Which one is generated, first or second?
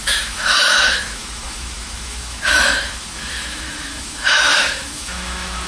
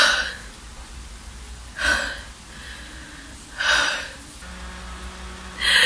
first